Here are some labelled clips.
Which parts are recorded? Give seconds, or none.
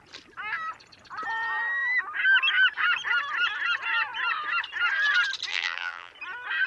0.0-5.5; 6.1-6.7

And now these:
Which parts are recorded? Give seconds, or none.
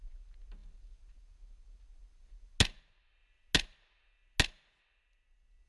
0.0-5.7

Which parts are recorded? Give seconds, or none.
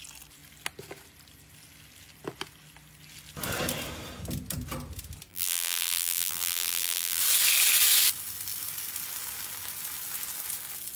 0.0-5.3; 7.2-11.0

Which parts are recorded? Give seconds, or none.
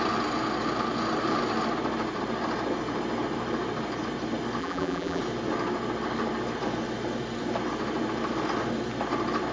0.0-4.6; 5.2-9.5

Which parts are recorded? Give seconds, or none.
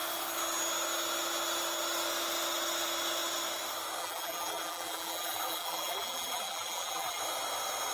0.0-4.0; 7.2-7.9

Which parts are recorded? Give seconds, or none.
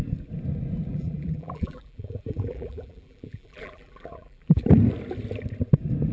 0.0-0.9; 4.6-6.1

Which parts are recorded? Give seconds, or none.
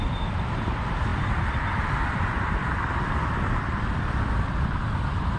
none